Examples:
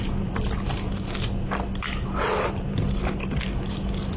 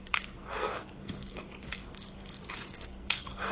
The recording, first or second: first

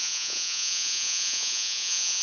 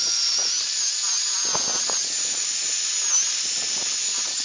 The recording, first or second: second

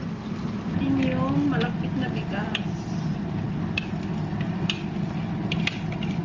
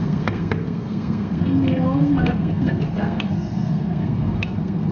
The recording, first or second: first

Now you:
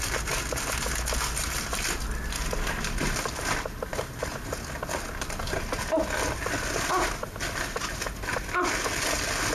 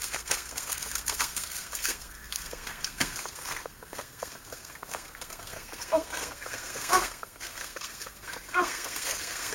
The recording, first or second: first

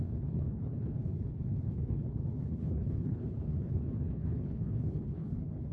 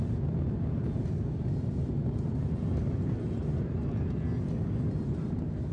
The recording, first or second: second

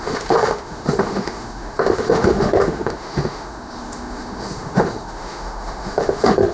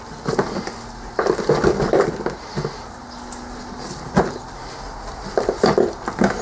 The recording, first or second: second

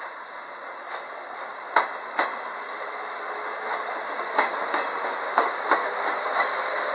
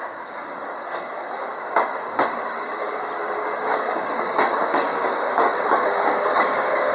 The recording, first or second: first